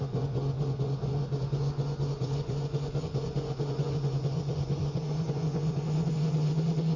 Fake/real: fake